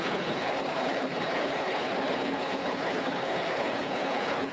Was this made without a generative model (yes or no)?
no